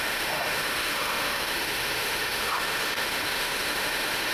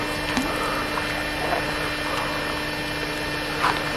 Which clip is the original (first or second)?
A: second